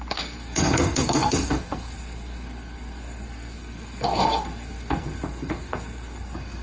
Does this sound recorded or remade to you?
remade